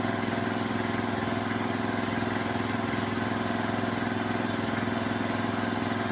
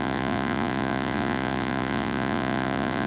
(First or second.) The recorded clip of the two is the first